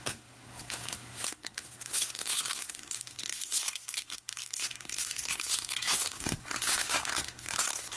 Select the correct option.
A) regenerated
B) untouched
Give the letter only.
A